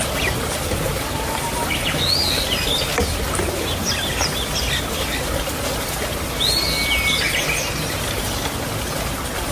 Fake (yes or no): no